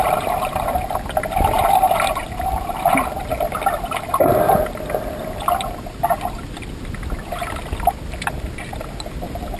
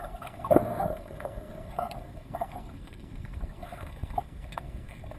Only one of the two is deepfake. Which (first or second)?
second